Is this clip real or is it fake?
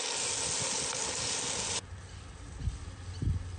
real